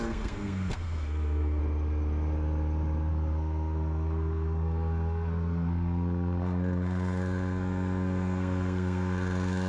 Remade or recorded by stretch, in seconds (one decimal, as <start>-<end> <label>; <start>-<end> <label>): 0.0-1.6 remade; 1.6-3.1 recorded; 3.1-9.7 remade